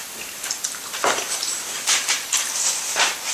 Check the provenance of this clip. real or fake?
real